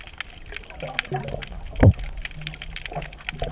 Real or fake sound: real